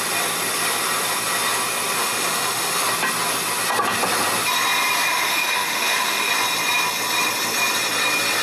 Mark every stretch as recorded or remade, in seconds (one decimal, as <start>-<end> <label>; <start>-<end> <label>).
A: 0.0-2.0 recorded; 2.0-2.8 remade; 2.8-5.1 recorded; 5.1-6.3 remade; 6.3-8.4 recorded